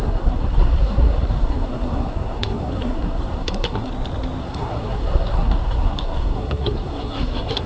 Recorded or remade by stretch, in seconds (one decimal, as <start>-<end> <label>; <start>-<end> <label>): 0.0-3.9 remade; 3.9-4.4 recorded; 4.4-7.7 remade

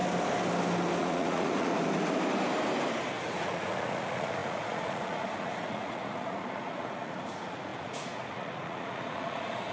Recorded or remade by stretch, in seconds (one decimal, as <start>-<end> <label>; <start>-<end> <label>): 0.0-1.0 recorded; 1.0-1.7 remade; 1.7-3.2 recorded; 3.2-9.7 remade

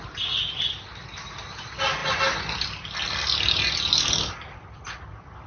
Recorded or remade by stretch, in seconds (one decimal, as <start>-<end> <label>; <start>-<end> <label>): 0.0-5.5 recorded

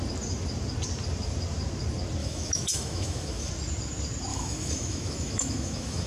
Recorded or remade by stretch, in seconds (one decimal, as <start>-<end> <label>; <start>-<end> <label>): 0.0-2.2 recorded; 2.2-3.5 remade; 3.5-4.3 recorded; 4.3-6.1 remade

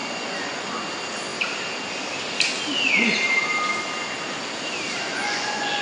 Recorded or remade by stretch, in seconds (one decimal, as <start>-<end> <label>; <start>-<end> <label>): 0.0-0.7 remade; 0.7-5.1 recorded; 5.1-5.8 remade

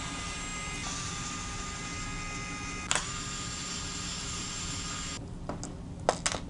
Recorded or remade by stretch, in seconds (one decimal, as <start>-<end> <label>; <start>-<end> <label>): 0.0-6.5 recorded